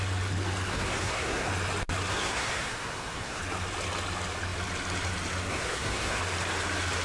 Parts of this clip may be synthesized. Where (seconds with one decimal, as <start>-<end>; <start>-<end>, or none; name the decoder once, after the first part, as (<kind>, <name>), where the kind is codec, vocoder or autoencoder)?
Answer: 0.7-1.5 (codec, SNAC); 2.1-3.4; 5.5-6.2